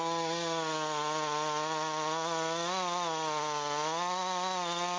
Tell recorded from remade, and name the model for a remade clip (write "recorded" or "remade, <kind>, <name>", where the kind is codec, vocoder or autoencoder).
recorded